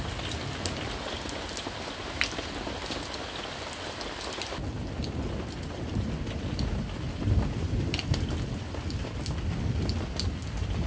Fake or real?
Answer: real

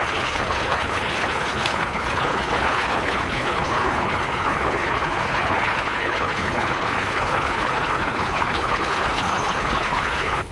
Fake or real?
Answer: fake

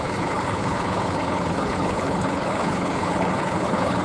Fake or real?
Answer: fake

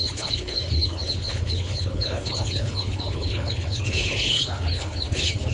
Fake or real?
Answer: fake